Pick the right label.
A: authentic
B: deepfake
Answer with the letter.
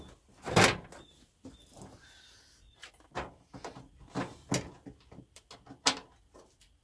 A